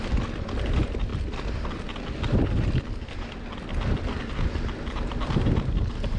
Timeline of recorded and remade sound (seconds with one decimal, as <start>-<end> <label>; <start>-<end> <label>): 0.0-6.2 recorded